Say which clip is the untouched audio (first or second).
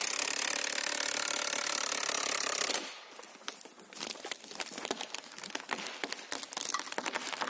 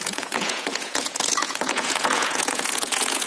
first